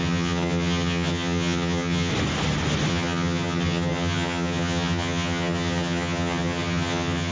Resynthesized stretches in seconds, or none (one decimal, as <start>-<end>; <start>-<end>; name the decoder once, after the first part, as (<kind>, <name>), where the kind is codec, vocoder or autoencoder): 0.0-2.1 (vocoder, HiFi-GAN); 2.9-7.3